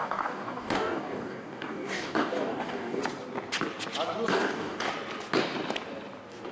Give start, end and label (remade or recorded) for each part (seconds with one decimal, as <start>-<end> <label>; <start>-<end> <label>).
0.0-3.0 remade; 3.0-4.3 recorded; 4.3-4.9 remade; 4.9-6.5 recorded